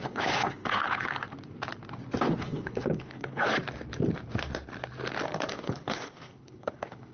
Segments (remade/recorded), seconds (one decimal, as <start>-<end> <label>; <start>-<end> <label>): 0.0-1.1 remade; 1.1-2.4 recorded; 2.4-3.5 remade; 3.5-5.5 recorded; 5.5-7.1 remade